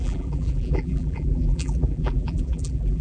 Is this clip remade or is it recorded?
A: remade